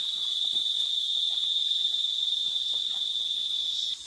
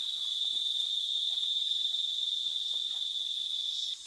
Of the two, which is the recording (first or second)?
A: second